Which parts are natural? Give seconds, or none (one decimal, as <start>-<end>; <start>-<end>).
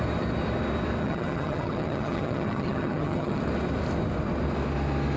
0.0-1.0; 3.4-5.2